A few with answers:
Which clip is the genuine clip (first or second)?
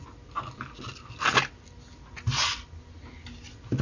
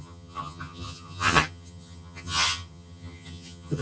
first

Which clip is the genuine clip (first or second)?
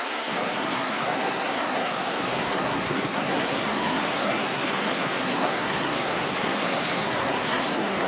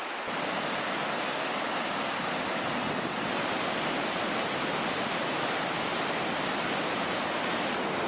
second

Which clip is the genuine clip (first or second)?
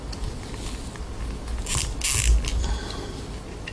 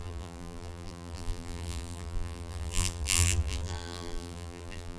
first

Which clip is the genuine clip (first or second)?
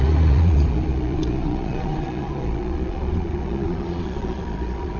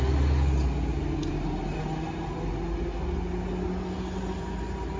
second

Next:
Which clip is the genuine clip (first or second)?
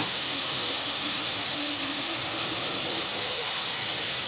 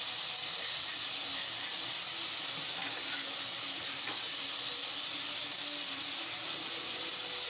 second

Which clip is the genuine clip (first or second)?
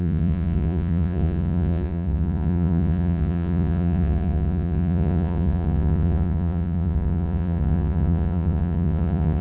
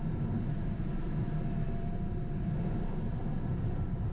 second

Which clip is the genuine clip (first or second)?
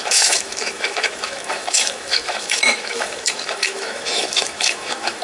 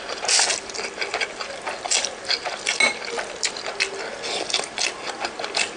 second